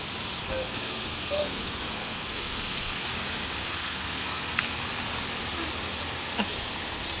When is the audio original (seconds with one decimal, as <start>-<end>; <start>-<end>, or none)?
0.0-0.4; 3.1-3.6; 4.6-7.2